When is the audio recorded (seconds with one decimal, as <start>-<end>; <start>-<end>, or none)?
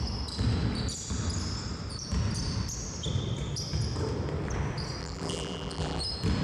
0.0-5.0; 6.0-6.4